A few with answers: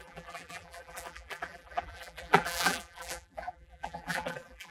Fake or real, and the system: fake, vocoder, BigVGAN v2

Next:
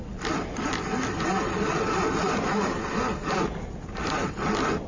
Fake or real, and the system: real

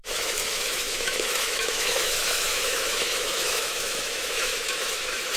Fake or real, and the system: fake, autoencoder, DAC-VAE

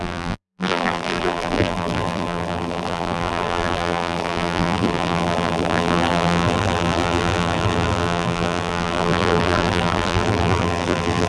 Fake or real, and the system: fake, vocoder, BigVGAN v2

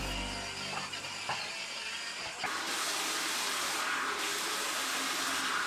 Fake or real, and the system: real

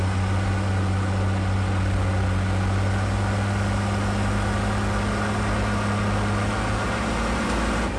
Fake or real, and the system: real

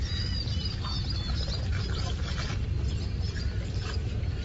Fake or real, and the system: real